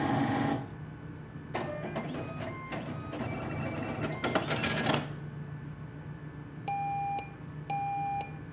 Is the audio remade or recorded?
recorded